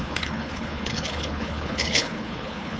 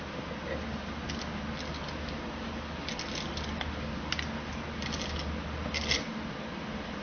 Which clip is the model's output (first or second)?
first